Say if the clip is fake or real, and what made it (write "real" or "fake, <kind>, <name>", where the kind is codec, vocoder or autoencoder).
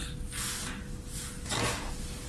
real